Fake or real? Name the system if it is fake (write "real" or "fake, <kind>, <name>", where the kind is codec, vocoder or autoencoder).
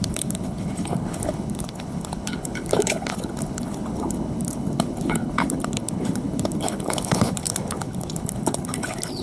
fake, codec, HILCodec